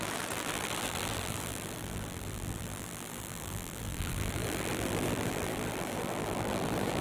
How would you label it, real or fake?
fake